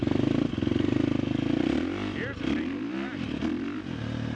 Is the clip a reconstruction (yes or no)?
no